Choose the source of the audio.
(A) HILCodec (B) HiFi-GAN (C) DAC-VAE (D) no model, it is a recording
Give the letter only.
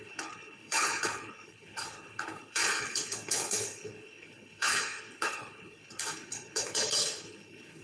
A